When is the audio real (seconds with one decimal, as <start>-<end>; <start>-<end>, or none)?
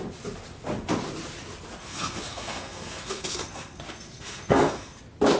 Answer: 0.0-1.8; 5.0-5.4